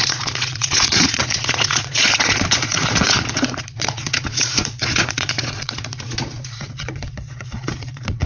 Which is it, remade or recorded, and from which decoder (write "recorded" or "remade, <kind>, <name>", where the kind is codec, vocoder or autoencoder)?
remade, vocoder, Vocos